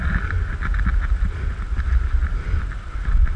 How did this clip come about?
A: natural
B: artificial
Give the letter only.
A